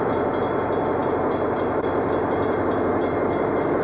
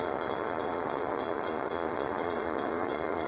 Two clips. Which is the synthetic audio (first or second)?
second